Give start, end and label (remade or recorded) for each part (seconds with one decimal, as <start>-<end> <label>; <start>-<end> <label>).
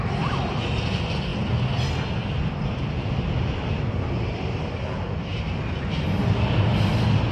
0.0-7.3 recorded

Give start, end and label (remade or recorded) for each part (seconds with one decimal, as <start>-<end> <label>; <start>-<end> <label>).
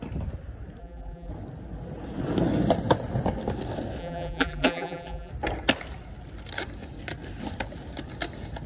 0.0-0.8 recorded; 0.8-1.3 remade; 1.3-4.0 recorded; 4.0-5.3 remade; 5.3-8.7 recorded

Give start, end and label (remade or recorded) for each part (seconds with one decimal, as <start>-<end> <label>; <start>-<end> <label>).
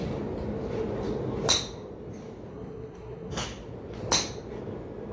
0.0-2.5 recorded; 2.5-3.3 remade; 3.3-5.1 recorded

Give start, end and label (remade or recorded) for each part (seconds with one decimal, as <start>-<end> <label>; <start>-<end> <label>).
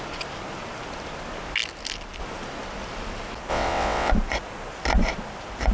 0.0-3.5 recorded; 3.5-4.1 remade; 4.1-5.7 recorded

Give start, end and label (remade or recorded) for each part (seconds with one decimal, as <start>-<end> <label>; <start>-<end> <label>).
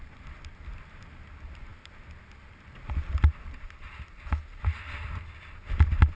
0.0-6.1 recorded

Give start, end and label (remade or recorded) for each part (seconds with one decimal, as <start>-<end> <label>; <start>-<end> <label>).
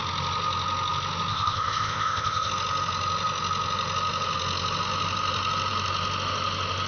0.0-1.3 recorded; 1.3-2.5 remade; 2.5-6.9 recorded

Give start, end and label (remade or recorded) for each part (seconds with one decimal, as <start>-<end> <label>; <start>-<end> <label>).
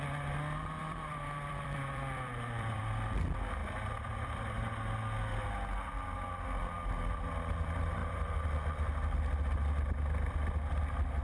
0.0-0.8 recorded; 0.8-2.8 remade; 2.8-3.6 recorded; 3.6-4.8 remade; 4.8-8.0 recorded; 8.0-8.5 remade; 8.5-11.2 recorded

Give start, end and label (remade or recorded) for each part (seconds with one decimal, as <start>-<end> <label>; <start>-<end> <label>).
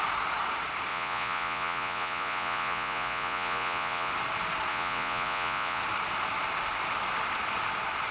0.0-0.9 recorded; 0.9-4.1 remade; 4.1-4.7 recorded; 4.7-5.8 remade; 5.8-8.1 recorded